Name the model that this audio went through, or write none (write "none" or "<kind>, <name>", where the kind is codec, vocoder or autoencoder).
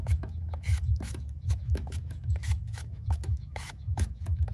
autoencoder, DAC-VAE